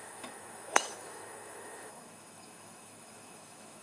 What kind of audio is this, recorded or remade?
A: remade